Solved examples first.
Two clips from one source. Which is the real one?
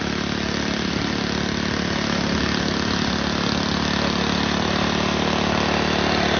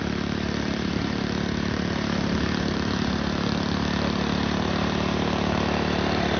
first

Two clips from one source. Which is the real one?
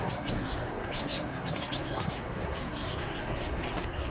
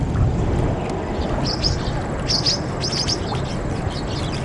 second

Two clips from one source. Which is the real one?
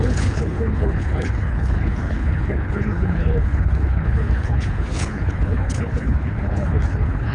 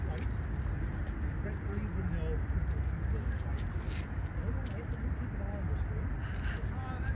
second